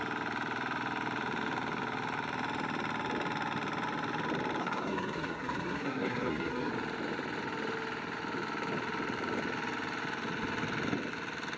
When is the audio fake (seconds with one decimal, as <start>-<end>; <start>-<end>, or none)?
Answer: 4.6-6.7